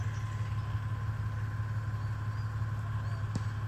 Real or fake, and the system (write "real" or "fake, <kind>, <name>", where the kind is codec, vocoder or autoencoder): real